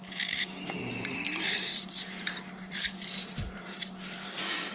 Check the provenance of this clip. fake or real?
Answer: fake